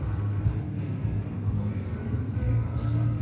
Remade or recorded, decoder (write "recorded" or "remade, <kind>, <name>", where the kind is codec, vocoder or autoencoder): remade, codec, SNAC